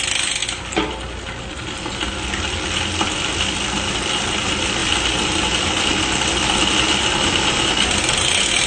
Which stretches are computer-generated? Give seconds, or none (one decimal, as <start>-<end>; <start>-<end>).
none

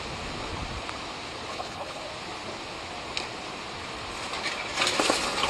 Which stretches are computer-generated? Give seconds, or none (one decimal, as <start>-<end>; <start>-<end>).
1.5-2.0

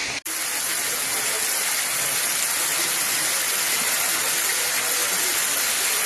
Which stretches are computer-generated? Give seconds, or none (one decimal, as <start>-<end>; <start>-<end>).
none

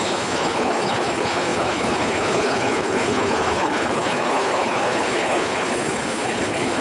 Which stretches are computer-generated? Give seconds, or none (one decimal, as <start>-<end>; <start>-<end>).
0.0-6.8

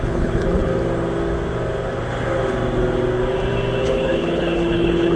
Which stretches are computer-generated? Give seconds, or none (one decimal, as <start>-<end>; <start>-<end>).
0.0-0.7; 3.8-5.2

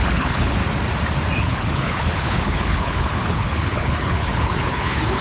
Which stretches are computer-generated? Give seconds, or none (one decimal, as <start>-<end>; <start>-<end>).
0.0-0.6; 1.4-5.2